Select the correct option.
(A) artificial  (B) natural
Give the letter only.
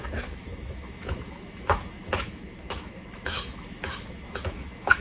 A